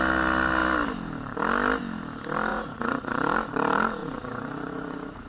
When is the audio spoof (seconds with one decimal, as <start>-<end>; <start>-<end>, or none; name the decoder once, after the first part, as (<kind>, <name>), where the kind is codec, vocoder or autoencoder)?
2.5-3.1 (vocoder, Vocos); 4.0-5.3